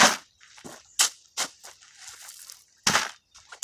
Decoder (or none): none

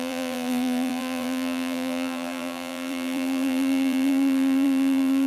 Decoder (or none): vocoder, BigVGAN v2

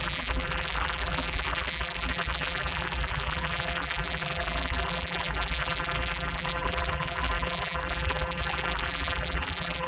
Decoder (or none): vocoder, BigVGAN v2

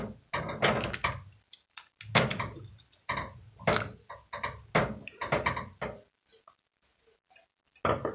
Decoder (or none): none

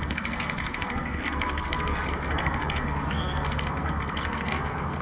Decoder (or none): codec, SNAC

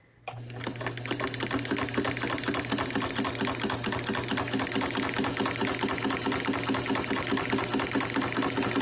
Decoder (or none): none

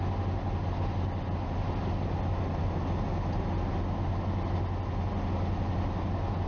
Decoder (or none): none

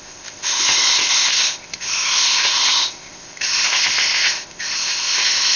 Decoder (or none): codec, ZipCodec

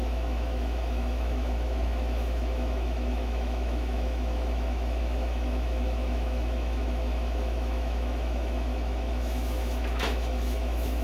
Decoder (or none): autoencoder, DAC-VAE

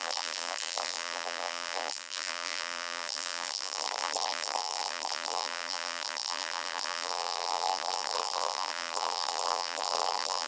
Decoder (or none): vocoder, BigVGAN v2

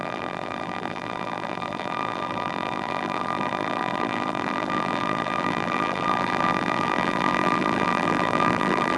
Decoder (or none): vocoder, BigVGAN v2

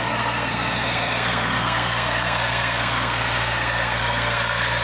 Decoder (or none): codec, SNAC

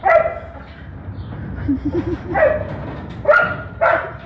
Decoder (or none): none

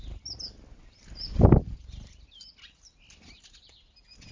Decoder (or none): none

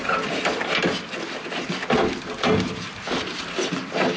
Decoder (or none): none